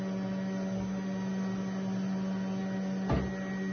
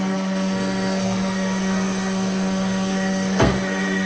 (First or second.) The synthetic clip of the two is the second